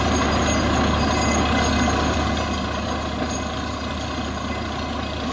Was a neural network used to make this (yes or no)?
no